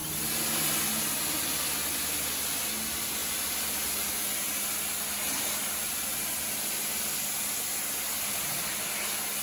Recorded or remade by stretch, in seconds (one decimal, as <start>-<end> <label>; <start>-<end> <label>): 0.0-9.4 recorded